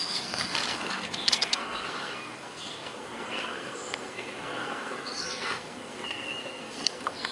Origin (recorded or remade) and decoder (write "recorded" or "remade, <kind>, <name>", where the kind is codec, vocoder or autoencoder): remade, codec, SNAC